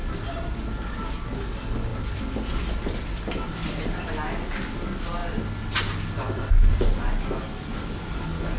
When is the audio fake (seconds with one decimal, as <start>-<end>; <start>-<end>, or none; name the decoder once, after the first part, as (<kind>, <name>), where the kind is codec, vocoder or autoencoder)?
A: 0.0-1.1 (vocoder, BigVGAN v2); 1.9-4.1